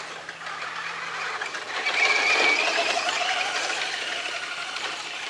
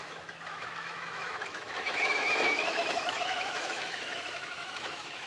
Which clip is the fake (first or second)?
second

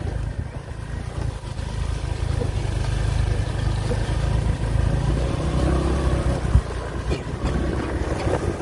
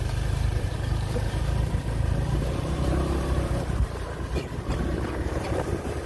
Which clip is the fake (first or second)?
second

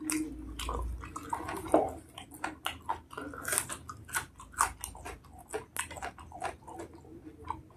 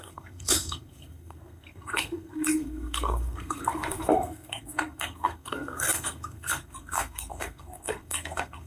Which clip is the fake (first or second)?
second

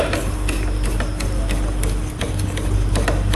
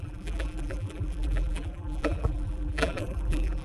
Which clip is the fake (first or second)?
second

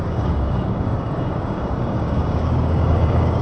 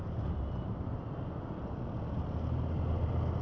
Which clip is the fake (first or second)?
first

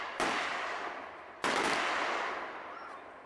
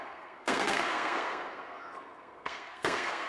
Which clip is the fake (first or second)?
second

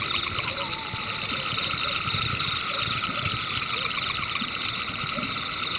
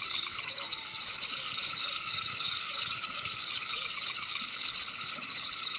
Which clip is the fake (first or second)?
second